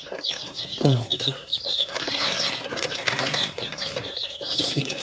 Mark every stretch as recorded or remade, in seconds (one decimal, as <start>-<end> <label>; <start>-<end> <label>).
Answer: 0.0-5.0 remade